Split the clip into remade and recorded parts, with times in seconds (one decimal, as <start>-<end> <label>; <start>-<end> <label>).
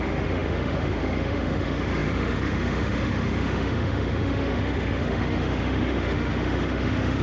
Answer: 0.0-7.2 remade